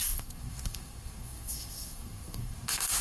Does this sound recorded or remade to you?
remade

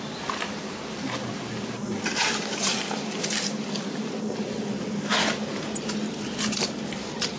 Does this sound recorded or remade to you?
recorded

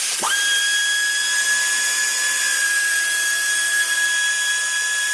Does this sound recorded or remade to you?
recorded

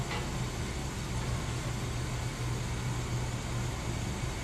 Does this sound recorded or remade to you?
recorded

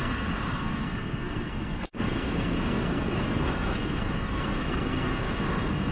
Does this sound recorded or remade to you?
remade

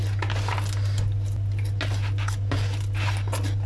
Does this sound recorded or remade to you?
recorded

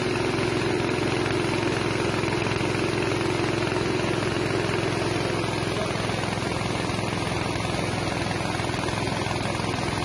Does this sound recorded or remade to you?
recorded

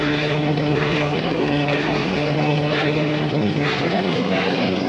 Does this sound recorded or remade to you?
remade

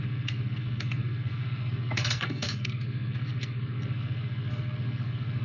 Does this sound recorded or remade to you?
remade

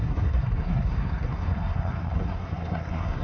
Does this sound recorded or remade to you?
remade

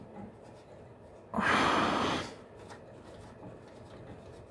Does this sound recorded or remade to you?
recorded